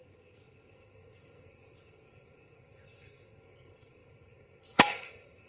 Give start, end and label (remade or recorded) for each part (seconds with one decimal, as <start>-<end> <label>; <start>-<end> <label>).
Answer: 0.0-5.5 remade